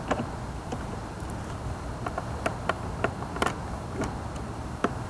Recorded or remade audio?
recorded